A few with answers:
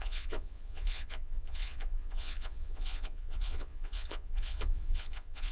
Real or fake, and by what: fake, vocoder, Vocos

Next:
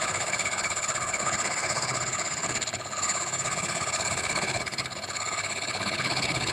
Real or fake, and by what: fake, codec, HILCodec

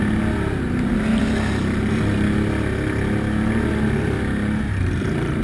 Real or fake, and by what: real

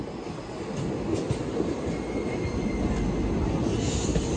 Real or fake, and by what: real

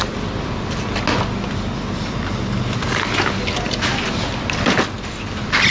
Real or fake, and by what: real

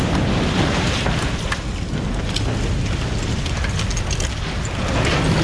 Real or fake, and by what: real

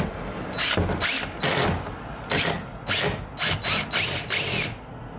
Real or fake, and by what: real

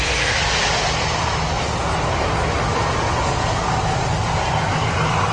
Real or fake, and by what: real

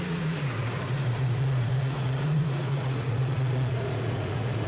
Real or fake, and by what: fake, vocoder, Vocos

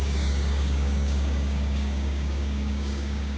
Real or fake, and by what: fake, codec, DAC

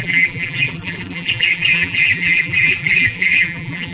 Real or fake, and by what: fake, vocoder, BigVGAN v2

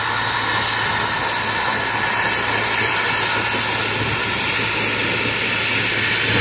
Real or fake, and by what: real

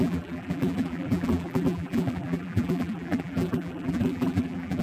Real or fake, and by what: fake, vocoder, BigVGAN v2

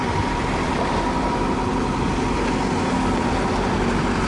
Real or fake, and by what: real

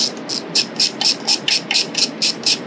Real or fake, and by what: real